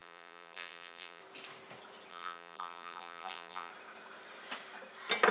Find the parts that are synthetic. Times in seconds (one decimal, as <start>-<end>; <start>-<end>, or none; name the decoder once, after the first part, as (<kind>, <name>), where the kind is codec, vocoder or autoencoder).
0.0-1.2 (vocoder, BigVGAN v2); 2.1-3.7

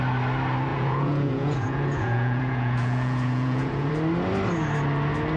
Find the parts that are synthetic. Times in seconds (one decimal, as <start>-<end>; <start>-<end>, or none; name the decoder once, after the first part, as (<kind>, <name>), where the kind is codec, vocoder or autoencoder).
0.7-3.9 (vocoder, Vocos)

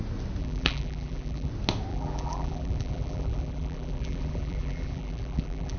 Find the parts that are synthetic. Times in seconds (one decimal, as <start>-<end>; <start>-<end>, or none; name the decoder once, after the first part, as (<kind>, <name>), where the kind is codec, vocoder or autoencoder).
0.4-1.5 (vocoder, BigVGAN v2); 1.9-5.8

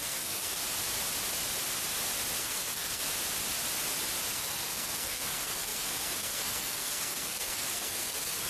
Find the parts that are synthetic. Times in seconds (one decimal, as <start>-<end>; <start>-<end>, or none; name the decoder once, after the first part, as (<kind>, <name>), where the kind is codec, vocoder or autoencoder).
0.0-0.6 (codec, SNAC); 2.4-3.0; 4.3-8.5

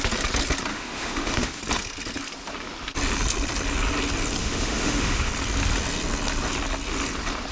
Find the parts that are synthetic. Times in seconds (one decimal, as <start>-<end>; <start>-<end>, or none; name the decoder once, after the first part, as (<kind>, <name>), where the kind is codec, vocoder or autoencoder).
0.7-1.6 (autoencoder, DAC-VAE); 4.4-5.3

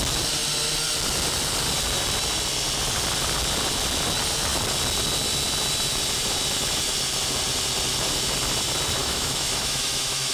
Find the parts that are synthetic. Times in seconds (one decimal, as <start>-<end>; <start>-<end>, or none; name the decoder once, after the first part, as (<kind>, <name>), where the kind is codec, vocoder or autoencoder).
9.0-10.3 (autoencoder, DAC-VAE)

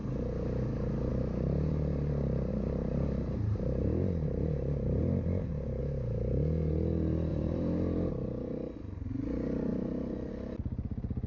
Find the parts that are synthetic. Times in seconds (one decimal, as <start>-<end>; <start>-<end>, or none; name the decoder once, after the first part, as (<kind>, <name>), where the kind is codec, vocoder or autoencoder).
2.5-5.8 (vocoder, BigVGAN v2); 7.3-8.1

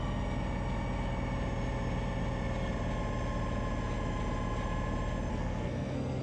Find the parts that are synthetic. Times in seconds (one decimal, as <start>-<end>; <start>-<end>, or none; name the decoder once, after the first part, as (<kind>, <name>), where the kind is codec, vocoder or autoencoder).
5.3-6.2 (codec, SNAC)